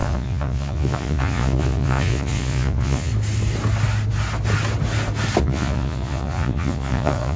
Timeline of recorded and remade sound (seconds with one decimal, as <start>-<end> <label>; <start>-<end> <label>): 0.0-3.1 remade; 3.1-5.4 recorded; 5.4-7.4 remade